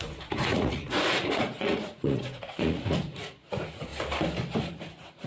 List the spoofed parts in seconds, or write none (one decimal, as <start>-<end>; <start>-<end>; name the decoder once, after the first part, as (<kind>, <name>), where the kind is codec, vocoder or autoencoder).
0.0-3.9 (vocoder, Vocos); 4.6-5.3